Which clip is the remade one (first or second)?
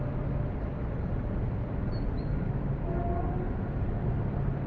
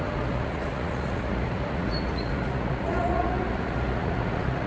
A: second